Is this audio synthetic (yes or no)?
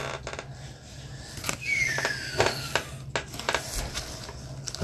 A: no